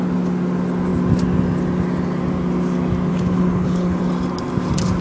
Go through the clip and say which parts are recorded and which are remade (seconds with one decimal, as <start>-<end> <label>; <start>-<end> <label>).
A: 0.0-3.1 recorded; 3.1-4.0 remade; 4.0-5.0 recorded